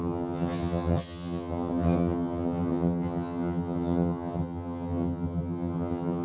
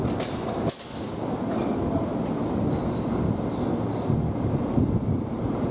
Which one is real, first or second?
second